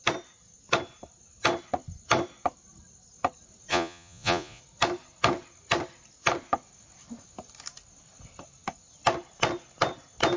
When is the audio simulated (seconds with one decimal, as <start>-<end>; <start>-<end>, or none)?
3.7-4.6